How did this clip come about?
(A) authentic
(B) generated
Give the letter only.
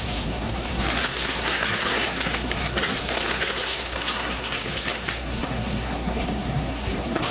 B